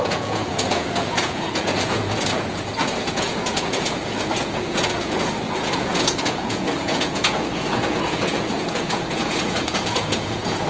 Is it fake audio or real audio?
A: fake